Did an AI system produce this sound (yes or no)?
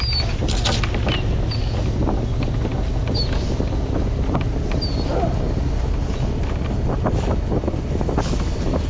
no